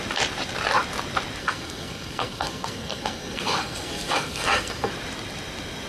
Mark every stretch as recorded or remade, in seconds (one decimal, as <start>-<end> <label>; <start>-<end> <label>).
0.0-1.4 recorded; 1.4-4.9 remade; 4.9-5.9 recorded